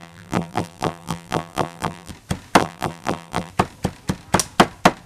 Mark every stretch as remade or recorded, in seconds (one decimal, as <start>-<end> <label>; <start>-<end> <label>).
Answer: 0.0-2.1 remade; 2.1-2.6 recorded; 2.6-3.5 remade; 3.5-5.1 recorded